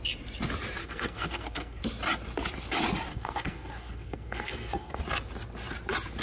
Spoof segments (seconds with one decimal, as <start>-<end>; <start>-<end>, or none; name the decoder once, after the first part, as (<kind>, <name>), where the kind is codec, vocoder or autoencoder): 0.8-1.8 (codec, SNAC); 3.1-5.0